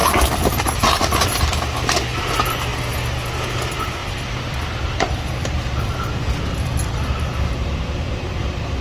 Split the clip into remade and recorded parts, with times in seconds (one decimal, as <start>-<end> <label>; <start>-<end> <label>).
0.0-0.5 remade; 0.5-4.0 recorded; 4.0-7.1 remade; 7.1-8.8 recorded